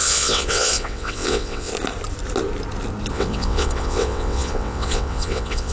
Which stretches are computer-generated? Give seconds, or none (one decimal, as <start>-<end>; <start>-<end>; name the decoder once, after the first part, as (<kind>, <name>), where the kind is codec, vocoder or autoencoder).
0.0-1.7 (vocoder, WaveNeXt); 3.1-5.7